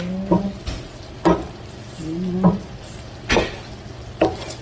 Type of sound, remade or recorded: recorded